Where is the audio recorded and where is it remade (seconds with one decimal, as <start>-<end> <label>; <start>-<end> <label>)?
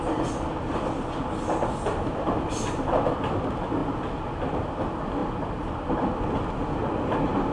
0.0-7.5 recorded